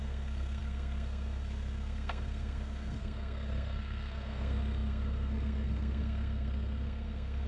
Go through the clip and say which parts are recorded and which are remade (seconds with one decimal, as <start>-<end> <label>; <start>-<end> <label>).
0.0-7.5 remade